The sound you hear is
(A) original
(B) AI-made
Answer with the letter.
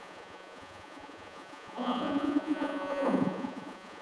B